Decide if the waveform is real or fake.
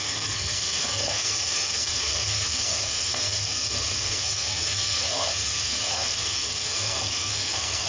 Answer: fake